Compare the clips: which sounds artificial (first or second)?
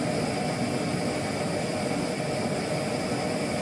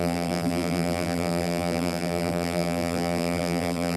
second